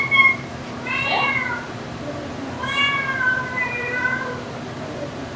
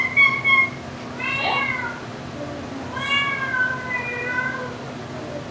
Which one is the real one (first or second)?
second